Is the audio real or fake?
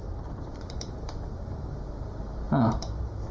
fake